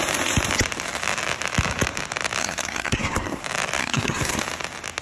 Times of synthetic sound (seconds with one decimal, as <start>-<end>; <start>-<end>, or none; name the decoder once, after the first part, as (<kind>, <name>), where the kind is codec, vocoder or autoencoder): 2.4-3.4 (codec, SNAC); 3.8-4.4